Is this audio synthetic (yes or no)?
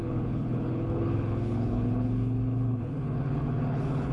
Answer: yes